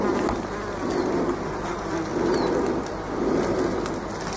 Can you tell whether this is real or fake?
real